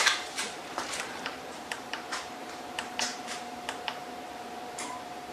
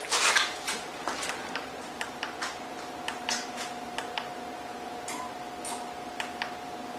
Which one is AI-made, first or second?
first